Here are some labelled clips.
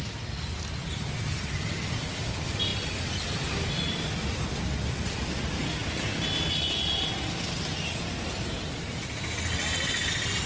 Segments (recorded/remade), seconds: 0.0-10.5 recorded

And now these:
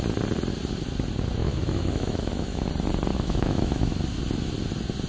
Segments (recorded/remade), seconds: 0.0-1.4 recorded; 1.4-2.7 remade; 2.7-3.1 recorded; 3.1-4.0 remade; 4.0-5.1 recorded

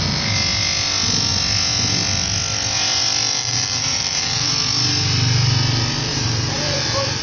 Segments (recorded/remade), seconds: 0.0-3.4 recorded; 3.4-4.5 remade; 4.5-6.1 recorded; 6.1-7.2 remade

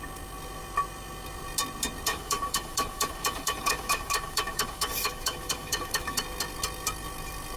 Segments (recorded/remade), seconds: 0.0-2.1 recorded; 2.1-6.2 remade; 6.2-7.6 recorded

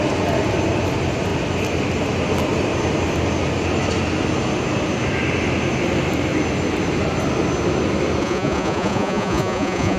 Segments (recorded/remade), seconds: 0.0-8.2 recorded; 8.2-10.0 remade

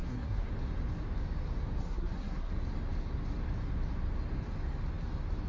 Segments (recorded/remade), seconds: 0.0-0.5 remade; 0.5-1.8 recorded; 1.8-2.5 remade; 2.5-5.5 recorded